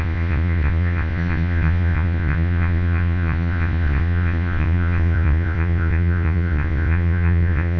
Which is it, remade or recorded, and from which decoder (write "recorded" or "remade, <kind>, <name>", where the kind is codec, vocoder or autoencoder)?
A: remade, vocoder, Vocos